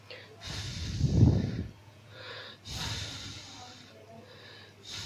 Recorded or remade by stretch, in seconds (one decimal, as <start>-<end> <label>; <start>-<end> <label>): 0.0-1.8 recorded; 1.8-2.4 remade; 2.4-5.1 recorded